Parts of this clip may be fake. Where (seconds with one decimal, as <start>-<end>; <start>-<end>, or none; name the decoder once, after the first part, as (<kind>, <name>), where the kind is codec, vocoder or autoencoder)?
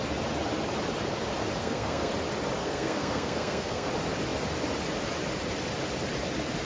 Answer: 1.6-2.1 (codec, SNAC); 2.6-3.9